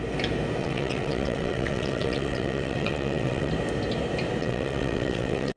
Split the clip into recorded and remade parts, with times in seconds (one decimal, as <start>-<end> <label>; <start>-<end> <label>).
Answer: 0.0-0.6 recorded; 0.6-3.5 remade; 3.5-4.4 recorded; 4.4-5.6 remade